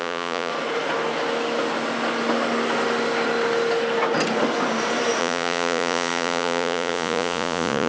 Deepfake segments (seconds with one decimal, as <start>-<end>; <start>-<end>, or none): 0.0-0.5; 5.2-7.9